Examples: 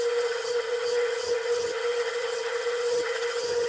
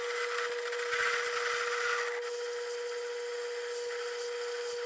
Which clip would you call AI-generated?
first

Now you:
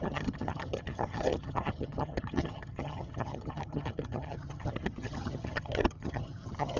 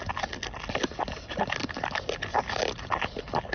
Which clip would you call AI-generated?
first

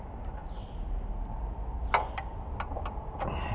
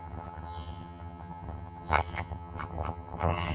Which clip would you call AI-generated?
second